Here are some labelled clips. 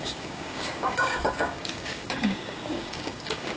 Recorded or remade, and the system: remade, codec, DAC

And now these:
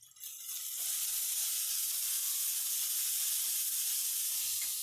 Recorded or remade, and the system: recorded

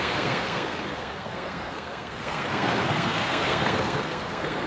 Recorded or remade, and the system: remade, codec, SNAC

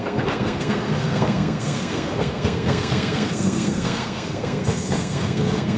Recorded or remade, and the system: remade, codec, SNAC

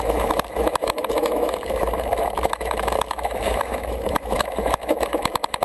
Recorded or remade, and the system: remade, autoencoder, DAC-VAE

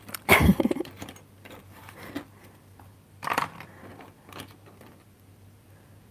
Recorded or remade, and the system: remade, vocoder, BigVGAN v2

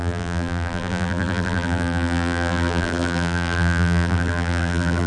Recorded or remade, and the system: remade, vocoder, BigVGAN v2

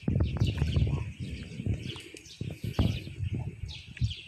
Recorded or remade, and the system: recorded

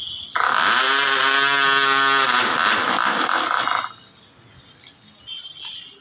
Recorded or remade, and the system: recorded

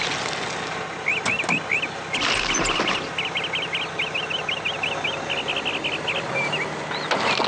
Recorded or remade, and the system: recorded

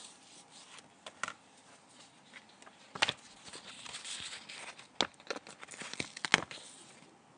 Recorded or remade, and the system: recorded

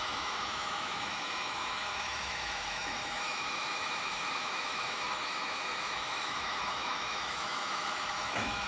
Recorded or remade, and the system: remade, autoencoder, DAC-VAE